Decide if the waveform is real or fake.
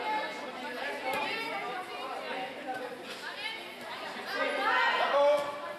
real